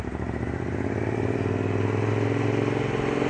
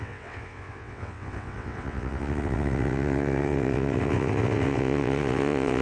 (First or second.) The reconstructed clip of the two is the second